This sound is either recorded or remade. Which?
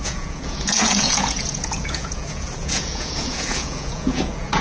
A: remade